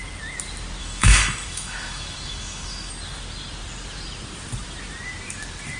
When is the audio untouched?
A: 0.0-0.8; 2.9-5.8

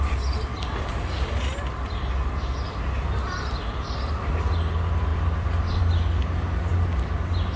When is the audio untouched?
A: 0.0-7.6

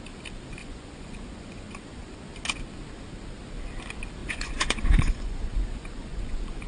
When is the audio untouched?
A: 0.0-0.6; 2.3-4.2

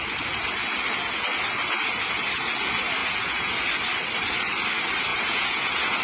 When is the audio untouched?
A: 0.0-3.0; 3.6-5.1

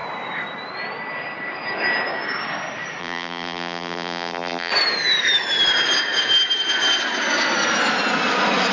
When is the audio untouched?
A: 0.0-3.0; 4.7-8.7

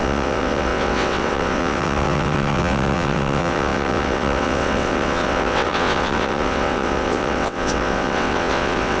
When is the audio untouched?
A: none